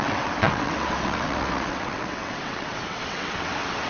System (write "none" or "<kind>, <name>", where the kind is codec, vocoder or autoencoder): vocoder, WaveNeXt